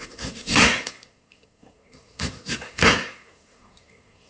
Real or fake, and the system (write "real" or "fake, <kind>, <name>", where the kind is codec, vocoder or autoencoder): fake, codec, SNAC